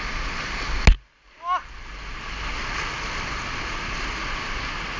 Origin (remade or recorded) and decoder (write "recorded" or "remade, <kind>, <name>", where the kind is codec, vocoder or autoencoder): recorded